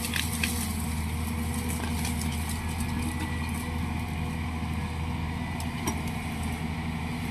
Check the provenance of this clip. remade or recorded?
recorded